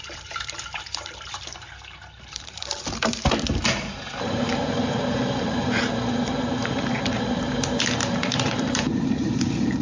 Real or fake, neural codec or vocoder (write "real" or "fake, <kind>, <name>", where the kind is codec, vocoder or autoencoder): fake, vocoder, BigVGAN v2